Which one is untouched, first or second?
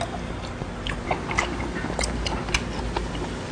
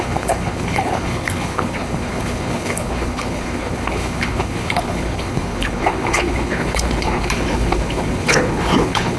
first